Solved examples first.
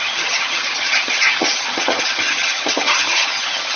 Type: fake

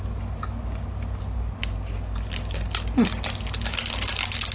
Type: real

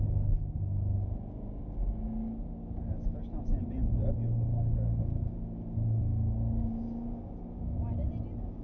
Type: real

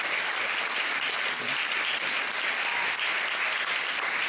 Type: real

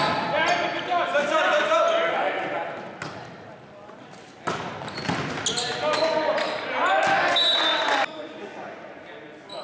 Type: real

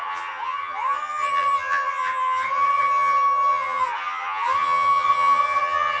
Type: fake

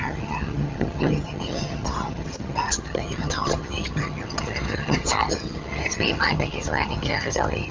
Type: fake